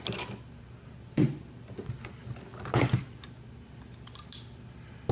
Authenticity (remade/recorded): recorded